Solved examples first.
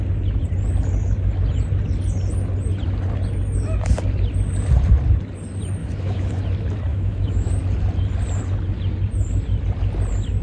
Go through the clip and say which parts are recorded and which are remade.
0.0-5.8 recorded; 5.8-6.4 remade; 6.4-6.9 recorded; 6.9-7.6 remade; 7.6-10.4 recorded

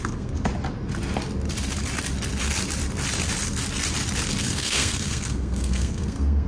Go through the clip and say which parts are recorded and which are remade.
0.0-0.5 remade; 0.5-4.4 recorded; 4.4-6.5 remade

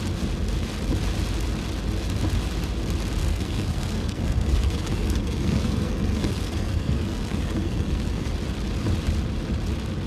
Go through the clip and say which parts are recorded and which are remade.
0.0-3.2 recorded; 3.2-8.3 remade; 8.3-10.1 recorded

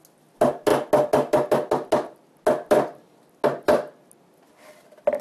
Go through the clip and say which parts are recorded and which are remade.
0.0-5.2 recorded

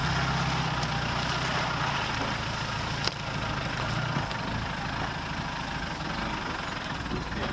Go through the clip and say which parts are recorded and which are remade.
0.0-7.5 recorded

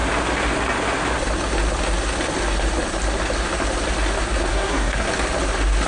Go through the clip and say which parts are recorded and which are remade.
0.0-4.5 recorded; 4.5-5.1 remade; 5.1-5.9 recorded

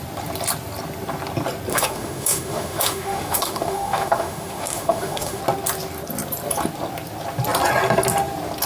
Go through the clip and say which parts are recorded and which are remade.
0.0-1.7 recorded; 1.7-5.4 remade; 5.4-8.7 recorded

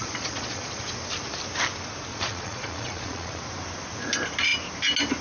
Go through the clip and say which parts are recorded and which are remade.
0.0-0.8 remade; 0.8-2.1 recorded; 2.1-3.5 remade; 3.5-5.2 recorded